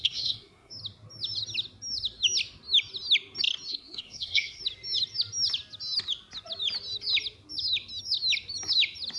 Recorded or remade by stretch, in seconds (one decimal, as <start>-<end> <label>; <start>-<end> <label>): 0.0-0.7 remade; 0.7-3.7 recorded; 3.7-4.6 remade; 4.6-9.2 recorded

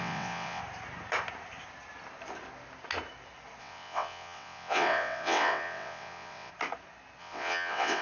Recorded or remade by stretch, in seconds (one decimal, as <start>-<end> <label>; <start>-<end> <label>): 0.0-0.6 remade; 0.6-3.6 recorded; 3.6-6.5 remade; 6.5-7.2 recorded; 7.2-8.0 remade

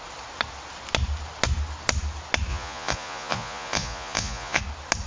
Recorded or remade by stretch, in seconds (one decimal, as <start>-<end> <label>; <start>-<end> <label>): 0.0-2.5 recorded; 2.5-4.6 remade; 4.6-5.1 recorded

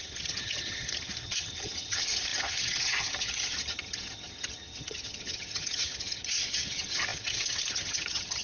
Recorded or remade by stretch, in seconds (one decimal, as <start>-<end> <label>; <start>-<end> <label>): 0.0-8.4 remade

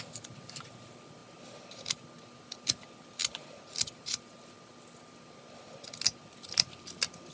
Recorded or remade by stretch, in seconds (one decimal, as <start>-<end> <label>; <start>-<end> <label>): 0.0-7.3 recorded